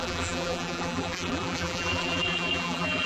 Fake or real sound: fake